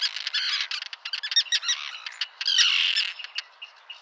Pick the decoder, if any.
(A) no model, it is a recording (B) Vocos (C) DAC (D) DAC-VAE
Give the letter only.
A